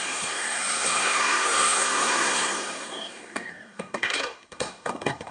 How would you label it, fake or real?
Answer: fake